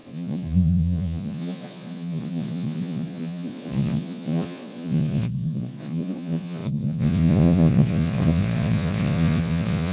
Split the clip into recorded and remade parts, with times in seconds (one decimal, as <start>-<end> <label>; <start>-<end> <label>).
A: 0.0-9.9 remade